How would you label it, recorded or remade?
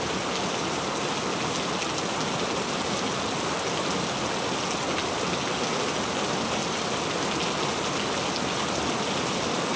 recorded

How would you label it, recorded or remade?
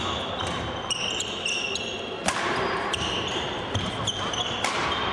recorded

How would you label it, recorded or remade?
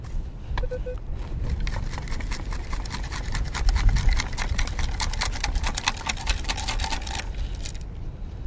recorded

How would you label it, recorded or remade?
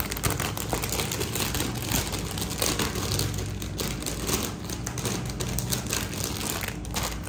recorded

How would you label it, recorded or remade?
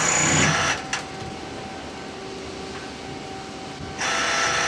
recorded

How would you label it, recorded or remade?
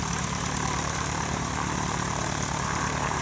remade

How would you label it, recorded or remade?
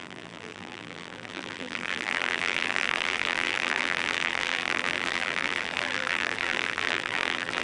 remade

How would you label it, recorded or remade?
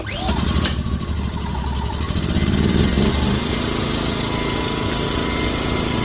recorded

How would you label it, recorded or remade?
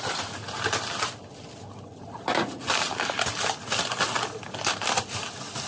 recorded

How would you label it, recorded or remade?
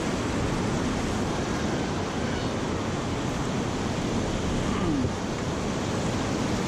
recorded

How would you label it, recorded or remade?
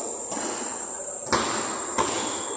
recorded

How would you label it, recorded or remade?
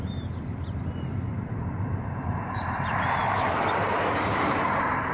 remade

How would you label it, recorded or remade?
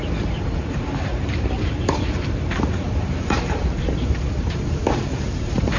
remade